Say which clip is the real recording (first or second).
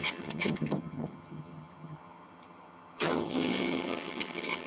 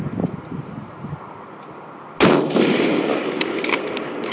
second